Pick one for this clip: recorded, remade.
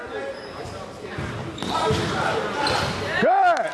recorded